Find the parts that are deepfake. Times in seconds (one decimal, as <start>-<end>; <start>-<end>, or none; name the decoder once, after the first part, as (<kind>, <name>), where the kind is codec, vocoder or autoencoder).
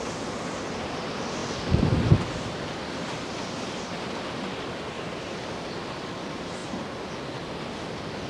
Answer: none